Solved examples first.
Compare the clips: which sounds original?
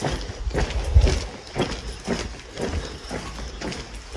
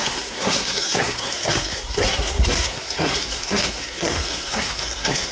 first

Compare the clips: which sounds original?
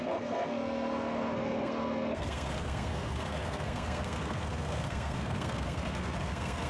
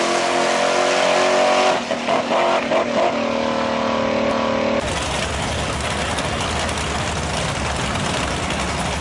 second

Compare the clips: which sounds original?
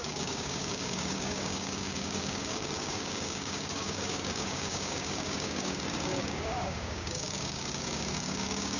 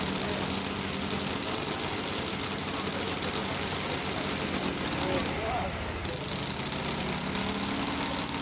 second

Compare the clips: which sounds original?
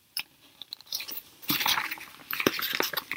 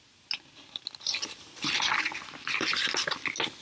second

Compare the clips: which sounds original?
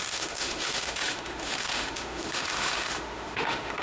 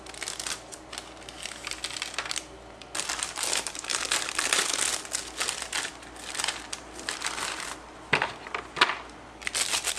second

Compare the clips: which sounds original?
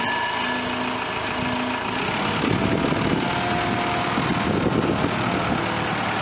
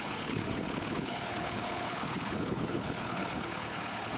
first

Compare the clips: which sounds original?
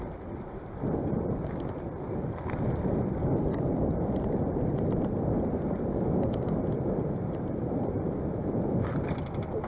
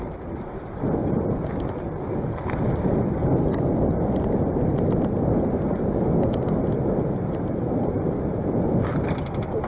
second